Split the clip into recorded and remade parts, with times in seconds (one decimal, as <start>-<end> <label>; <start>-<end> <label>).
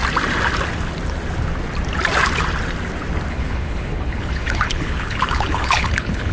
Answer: 0.0-3.3 recorded; 3.3-6.3 remade